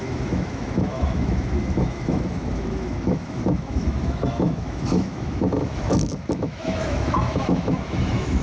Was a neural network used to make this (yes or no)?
yes